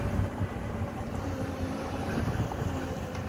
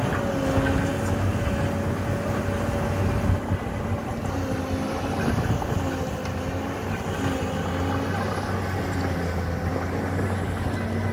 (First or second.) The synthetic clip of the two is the first